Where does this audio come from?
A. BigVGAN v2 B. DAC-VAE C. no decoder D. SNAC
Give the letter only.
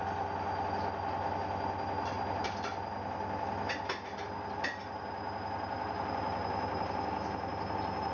C